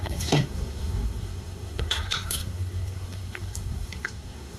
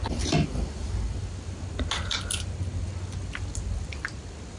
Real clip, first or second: second